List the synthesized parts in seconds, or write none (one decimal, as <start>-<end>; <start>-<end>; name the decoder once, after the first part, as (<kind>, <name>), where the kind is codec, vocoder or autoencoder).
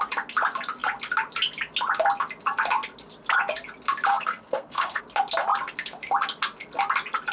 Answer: 4.1-5.0 (codec, SNAC)